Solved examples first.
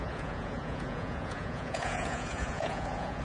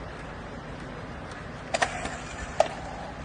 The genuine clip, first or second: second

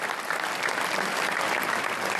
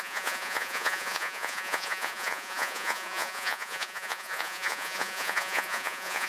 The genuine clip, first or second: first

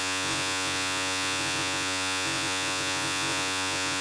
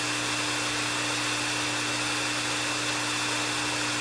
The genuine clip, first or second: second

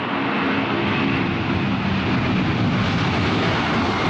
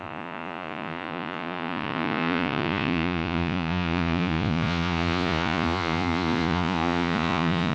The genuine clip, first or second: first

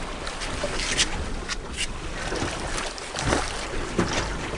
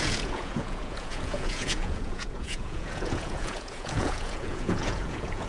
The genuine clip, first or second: first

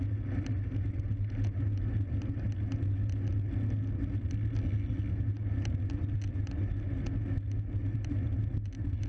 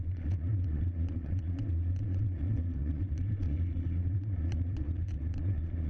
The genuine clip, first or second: first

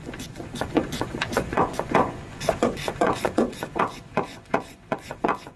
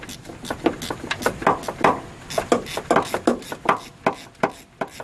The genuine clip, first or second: second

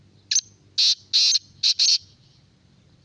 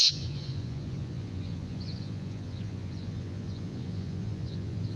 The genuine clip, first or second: first